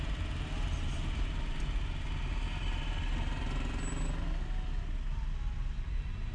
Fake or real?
real